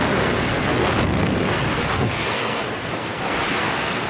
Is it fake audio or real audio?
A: fake